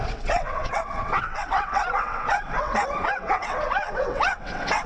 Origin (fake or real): fake